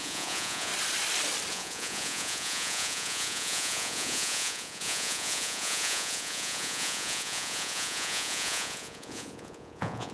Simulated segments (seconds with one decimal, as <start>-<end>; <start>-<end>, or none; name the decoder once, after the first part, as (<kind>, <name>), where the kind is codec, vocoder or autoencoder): 0.0-0.7 (vocoder, Vocos); 1.5-10.1